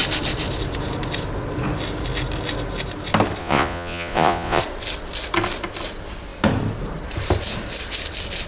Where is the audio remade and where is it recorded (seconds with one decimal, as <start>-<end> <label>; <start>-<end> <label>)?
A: 0.0-3.4 recorded; 3.4-4.6 remade; 4.6-8.5 recorded